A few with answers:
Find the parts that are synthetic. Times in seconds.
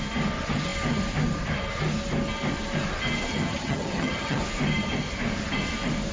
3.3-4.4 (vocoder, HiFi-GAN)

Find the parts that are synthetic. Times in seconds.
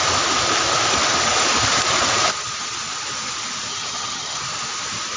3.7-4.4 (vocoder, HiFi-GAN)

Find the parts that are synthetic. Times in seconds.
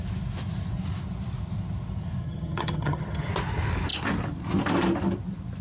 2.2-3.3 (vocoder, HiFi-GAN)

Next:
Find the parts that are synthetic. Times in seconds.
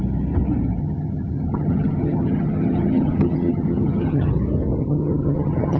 0.8-4.3 (vocoder, HiFi-GAN); 4.8-5.8